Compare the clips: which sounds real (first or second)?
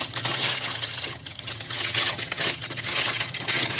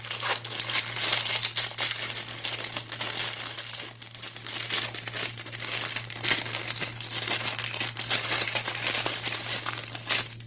second